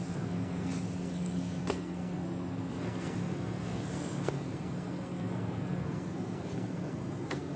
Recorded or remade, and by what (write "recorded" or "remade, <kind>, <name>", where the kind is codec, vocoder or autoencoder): remade, codec, SNAC